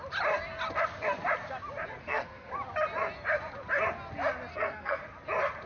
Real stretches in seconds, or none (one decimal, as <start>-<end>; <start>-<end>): 0.0-2.0; 2.5-4.5; 5.0-5.7

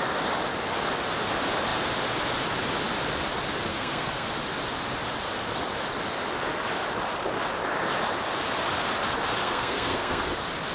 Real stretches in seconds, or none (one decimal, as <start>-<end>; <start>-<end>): 0.0-3.7; 4.3-9.4; 10.2-10.7